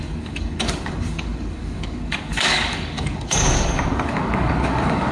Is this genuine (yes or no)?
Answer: no